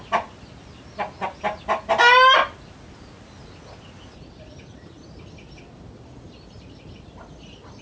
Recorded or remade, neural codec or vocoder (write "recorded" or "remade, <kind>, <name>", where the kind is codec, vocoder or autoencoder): recorded